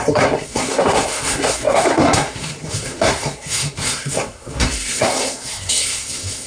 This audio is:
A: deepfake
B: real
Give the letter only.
A